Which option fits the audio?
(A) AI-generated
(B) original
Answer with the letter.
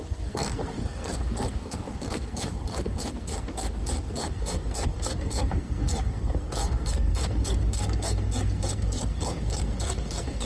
A